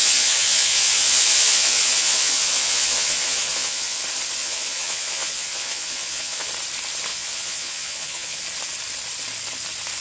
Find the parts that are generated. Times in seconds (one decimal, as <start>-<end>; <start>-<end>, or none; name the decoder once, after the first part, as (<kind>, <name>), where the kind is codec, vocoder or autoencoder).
0.0-4.0 (vocoder, Vocos); 4.4-6.5; 7.1-8.4